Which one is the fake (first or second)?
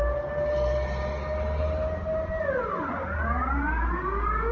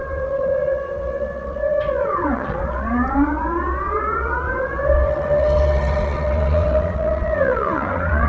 second